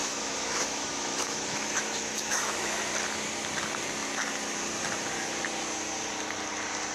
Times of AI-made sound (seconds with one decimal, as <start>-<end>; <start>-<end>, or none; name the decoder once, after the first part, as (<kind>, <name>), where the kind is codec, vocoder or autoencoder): 0.0-2.8 (autoencoder, DAC-VAE)